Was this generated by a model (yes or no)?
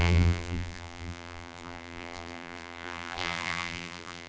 yes